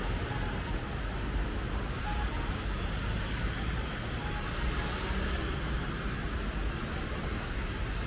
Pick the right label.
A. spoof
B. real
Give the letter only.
B